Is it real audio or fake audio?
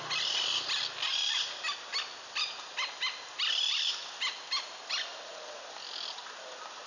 real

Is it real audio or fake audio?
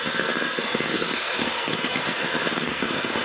fake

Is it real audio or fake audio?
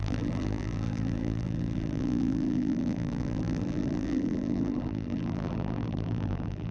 fake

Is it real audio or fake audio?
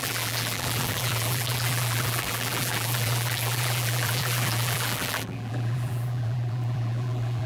fake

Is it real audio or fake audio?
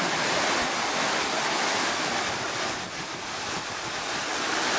fake